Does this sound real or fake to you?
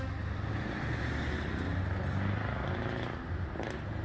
real